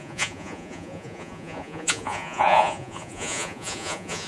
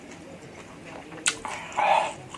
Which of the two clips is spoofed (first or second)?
first